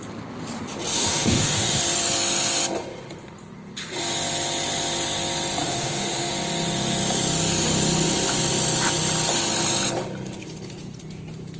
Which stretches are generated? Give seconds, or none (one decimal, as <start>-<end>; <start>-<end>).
0.9-1.8; 5.6-6.3